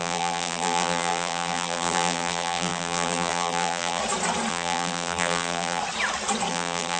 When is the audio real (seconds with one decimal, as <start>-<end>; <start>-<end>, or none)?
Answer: 4.0-4.5; 5.8-6.5